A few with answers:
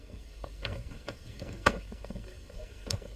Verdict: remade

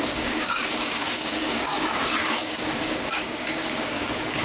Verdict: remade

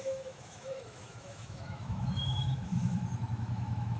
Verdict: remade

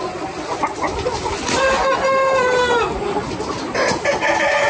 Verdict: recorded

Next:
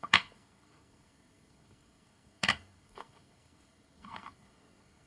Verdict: remade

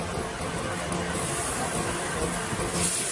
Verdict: recorded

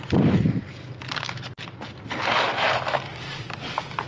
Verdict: recorded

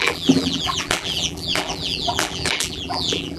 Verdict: remade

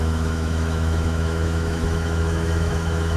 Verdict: remade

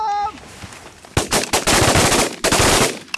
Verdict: recorded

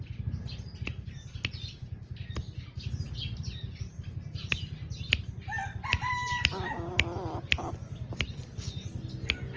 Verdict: recorded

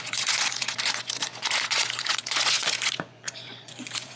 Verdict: remade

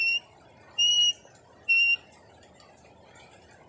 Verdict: recorded